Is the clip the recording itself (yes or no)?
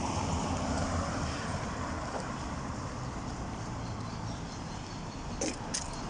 yes